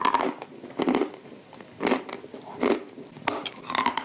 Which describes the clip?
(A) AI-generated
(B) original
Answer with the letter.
B